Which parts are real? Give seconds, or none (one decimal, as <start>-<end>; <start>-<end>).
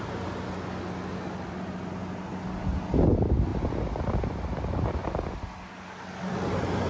0.0-3.5; 4.1-6.9